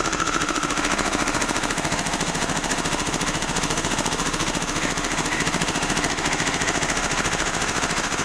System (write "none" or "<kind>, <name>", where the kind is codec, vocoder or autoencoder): autoencoder, DAC-VAE